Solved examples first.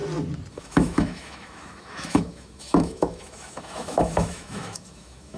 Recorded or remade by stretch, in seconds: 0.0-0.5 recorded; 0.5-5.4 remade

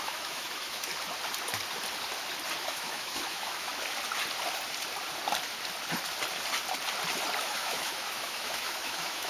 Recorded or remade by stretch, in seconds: 0.0-0.9 remade; 0.9-2.6 recorded; 2.6-3.7 remade; 3.7-7.4 recorded; 7.4-9.3 remade

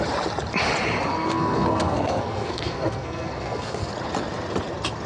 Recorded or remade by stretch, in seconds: 0.0-1.1 recorded; 1.1-3.9 remade; 3.9-5.1 recorded

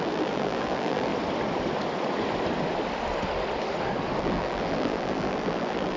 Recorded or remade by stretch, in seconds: 0.0-1.1 remade; 1.1-4.2 recorded; 4.2-6.0 remade